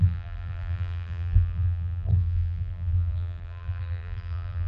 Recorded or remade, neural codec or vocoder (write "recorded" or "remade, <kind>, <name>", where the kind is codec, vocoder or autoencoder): remade, vocoder, BigVGAN v2